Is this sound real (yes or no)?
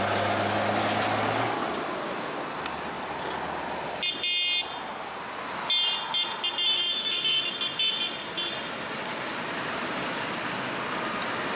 yes